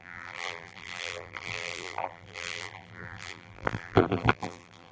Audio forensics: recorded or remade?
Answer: remade